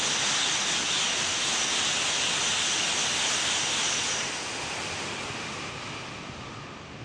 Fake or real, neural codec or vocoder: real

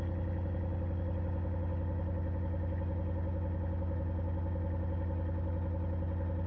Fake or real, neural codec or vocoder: real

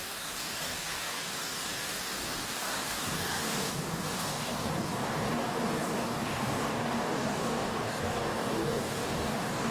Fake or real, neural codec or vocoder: fake, codec, DAC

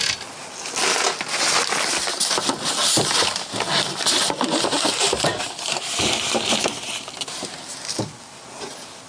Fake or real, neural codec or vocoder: real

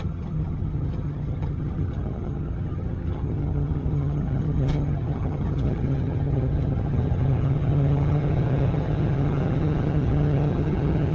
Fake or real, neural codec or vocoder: fake, vocoder, HiFi-GAN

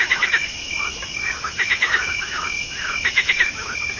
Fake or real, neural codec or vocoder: fake, autoencoder, DAC-VAE